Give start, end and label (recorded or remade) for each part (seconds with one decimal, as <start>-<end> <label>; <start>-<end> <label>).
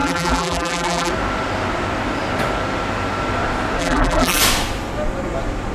0.0-1.1 remade; 1.1-3.8 recorded; 3.8-4.4 remade; 4.4-5.7 recorded